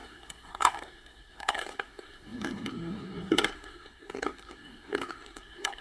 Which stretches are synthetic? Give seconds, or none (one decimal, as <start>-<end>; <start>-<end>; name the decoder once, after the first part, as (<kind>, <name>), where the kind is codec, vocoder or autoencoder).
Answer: 0.0-5.8 (codec, SNAC)